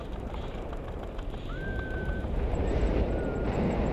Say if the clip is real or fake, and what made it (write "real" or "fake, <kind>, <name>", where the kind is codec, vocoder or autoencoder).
fake, vocoder, BigVGAN v2